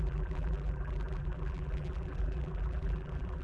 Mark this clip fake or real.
fake